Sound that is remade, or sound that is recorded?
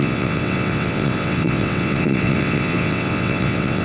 remade